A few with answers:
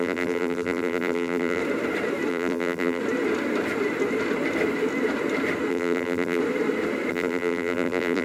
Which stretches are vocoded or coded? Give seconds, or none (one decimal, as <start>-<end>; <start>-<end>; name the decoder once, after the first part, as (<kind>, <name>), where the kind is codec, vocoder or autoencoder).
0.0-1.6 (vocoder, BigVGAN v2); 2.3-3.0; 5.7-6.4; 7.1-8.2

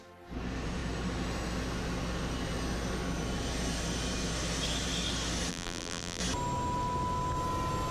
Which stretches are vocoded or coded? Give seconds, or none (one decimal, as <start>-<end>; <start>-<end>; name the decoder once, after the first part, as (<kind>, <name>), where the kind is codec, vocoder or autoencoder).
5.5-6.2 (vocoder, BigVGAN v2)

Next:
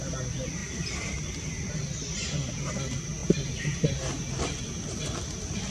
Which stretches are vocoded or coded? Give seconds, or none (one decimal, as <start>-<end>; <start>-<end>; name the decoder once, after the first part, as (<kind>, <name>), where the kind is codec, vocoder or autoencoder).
none

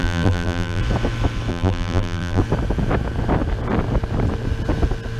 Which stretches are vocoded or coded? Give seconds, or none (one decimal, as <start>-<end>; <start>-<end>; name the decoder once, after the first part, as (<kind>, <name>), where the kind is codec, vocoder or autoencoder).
0.0-0.8 (vocoder, BigVGAN v2); 1.5-2.4

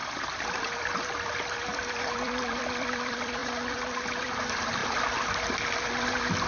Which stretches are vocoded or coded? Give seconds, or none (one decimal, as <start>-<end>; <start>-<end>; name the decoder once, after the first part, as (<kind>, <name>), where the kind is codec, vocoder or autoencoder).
0.0-4.8 (vocoder, BigVGAN v2); 6.1-6.5